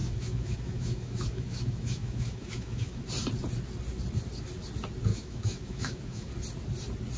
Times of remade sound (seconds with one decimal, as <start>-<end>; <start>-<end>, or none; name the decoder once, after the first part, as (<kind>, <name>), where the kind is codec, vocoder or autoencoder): 0.0-3.0 (autoencoder, DAC-VAE); 5.1-6.3